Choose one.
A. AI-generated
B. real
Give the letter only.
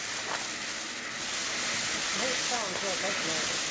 B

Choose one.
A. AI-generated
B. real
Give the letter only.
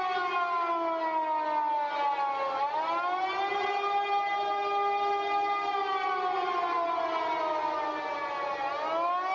B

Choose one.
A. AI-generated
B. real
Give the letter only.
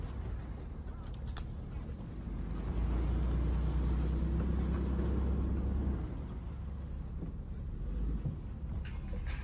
B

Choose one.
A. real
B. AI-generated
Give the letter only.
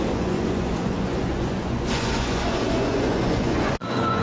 B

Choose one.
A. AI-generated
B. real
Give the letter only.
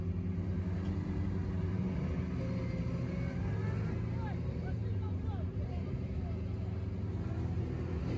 B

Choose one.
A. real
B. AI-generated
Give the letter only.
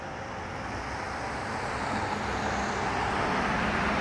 A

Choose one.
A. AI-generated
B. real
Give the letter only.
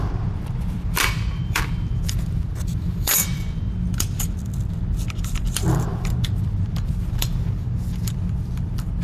A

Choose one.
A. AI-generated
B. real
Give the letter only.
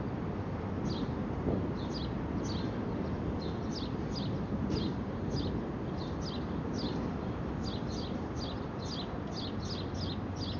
B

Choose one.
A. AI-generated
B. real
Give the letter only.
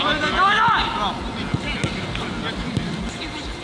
B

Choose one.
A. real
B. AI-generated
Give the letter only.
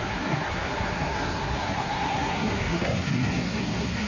B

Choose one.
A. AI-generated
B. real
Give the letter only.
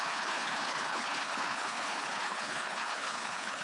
A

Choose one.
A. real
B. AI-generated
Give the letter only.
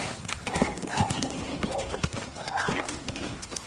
B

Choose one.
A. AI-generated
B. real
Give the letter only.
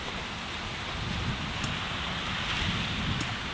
B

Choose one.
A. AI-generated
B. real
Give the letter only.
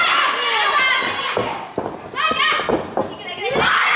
B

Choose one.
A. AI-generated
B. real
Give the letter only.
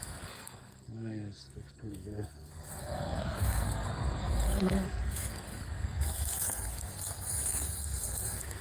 A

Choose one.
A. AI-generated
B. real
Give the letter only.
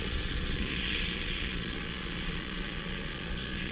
A